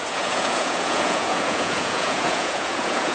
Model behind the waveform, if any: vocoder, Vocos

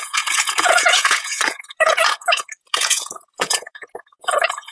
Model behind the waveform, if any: vocoder, Vocos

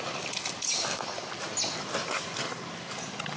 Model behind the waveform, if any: none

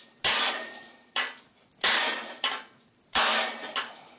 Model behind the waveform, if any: none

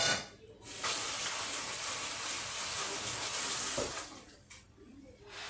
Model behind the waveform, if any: none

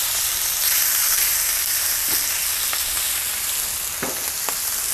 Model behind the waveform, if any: none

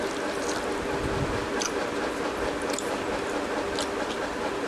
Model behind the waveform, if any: none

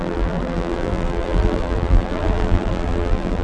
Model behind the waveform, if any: vocoder, BigVGAN v2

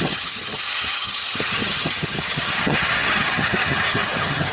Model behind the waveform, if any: vocoder, HiFi-GAN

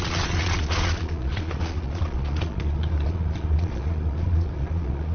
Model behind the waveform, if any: vocoder, Vocos